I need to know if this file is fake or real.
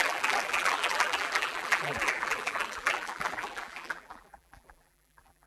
fake